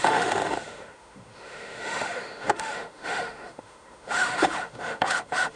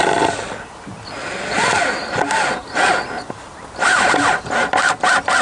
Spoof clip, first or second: first